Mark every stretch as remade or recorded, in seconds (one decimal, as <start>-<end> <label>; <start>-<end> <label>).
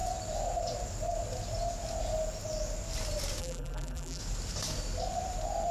0.0-3.4 recorded; 3.4-4.2 remade; 4.2-5.7 recorded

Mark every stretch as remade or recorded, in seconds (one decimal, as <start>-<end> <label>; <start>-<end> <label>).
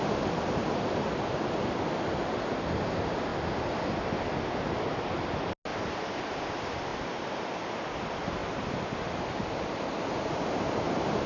0.0-5.7 recorded; 5.7-6.2 remade; 6.2-6.9 recorded; 6.9-7.7 remade; 7.7-11.3 recorded